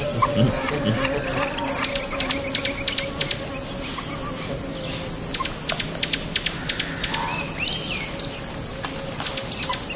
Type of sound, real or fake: real